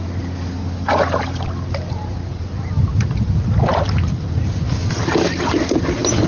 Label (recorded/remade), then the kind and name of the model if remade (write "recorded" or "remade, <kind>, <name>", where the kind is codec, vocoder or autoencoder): recorded